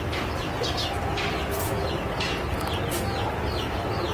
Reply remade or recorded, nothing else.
recorded